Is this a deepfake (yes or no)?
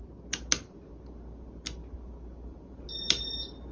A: no